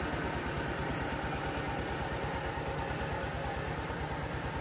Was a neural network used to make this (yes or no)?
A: no